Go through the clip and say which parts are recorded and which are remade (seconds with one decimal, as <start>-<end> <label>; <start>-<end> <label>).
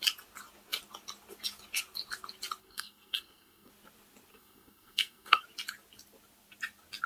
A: 0.0-2.6 recorded; 2.6-3.7 remade; 3.7-4.3 recorded; 4.3-5.4 remade; 5.4-7.1 recorded